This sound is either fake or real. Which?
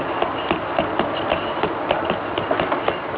real